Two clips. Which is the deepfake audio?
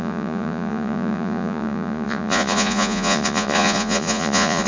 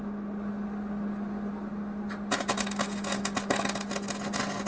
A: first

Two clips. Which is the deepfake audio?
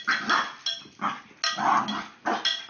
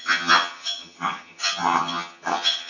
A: second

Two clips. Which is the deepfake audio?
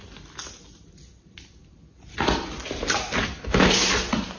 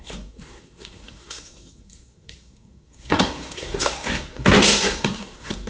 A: second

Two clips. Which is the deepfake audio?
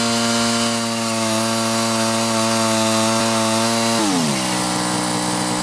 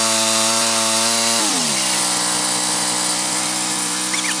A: second